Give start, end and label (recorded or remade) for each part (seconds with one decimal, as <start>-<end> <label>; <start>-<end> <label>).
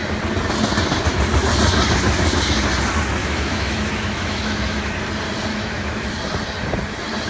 0.0-3.2 recorded; 3.2-4.9 remade; 4.9-5.5 recorded; 5.5-6.1 remade; 6.1-7.3 recorded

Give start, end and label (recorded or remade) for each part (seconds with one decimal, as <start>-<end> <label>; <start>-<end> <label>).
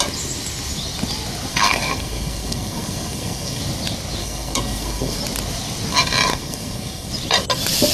0.0-1.5 recorded; 1.5-3.6 remade; 3.6-4.2 recorded; 4.2-5.2 remade; 5.2-6.3 recorded; 6.3-7.1 remade; 7.1-7.9 recorded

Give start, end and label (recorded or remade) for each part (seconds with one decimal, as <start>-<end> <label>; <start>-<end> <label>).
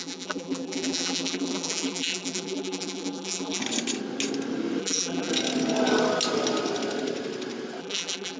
0.0-3.6 remade; 3.6-4.8 recorded; 4.8-5.3 remade; 5.3-7.8 recorded; 7.8-8.4 remade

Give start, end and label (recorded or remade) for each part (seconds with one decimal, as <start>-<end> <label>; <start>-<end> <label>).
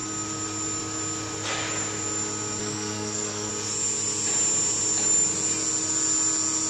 0.0-2.6 recorded; 2.6-3.5 remade; 3.5-6.7 recorded